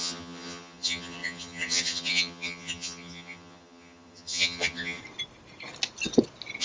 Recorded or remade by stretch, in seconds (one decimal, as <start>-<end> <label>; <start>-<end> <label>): 0.0-5.0 remade; 5.0-6.6 recorded